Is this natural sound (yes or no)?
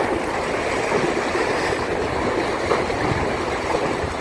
yes